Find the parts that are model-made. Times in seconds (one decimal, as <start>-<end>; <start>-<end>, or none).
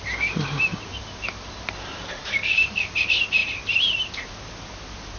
2.2-2.9